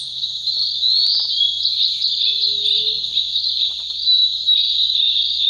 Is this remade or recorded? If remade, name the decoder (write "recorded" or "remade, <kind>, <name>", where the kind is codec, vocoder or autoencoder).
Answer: recorded